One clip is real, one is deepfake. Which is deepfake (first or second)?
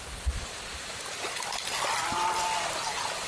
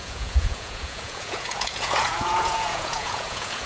second